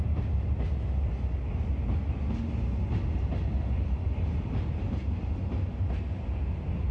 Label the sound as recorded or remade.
recorded